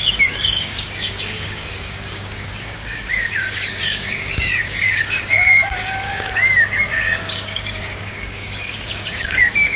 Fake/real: fake